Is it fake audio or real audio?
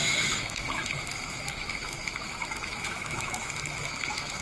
fake